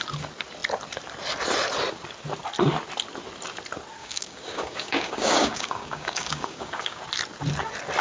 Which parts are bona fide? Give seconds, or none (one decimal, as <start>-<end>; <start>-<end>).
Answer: 0.0-4.0; 7.0-8.0